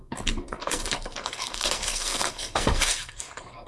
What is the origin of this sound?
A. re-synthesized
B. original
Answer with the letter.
A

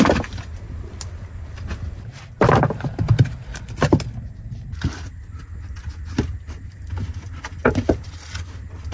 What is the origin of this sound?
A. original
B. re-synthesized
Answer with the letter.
A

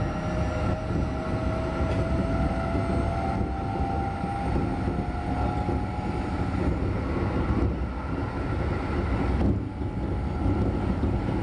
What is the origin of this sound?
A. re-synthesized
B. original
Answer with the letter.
B